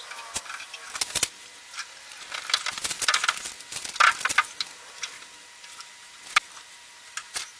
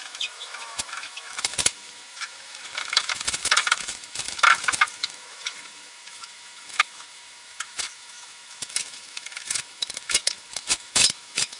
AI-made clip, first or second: second